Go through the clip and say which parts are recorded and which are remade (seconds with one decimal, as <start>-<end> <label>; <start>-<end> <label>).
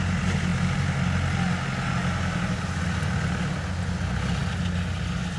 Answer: 0.0-5.4 recorded